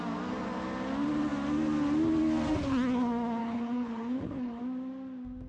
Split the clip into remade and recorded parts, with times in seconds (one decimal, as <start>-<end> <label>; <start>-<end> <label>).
0.0-3.4 recorded; 3.4-4.6 remade; 4.6-5.5 recorded